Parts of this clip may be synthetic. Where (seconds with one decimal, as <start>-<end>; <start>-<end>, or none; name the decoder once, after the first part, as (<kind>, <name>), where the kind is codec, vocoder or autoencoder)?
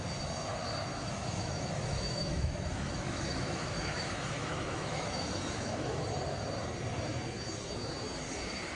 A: 0.9-6.0 (autoencoder, DAC-VAE)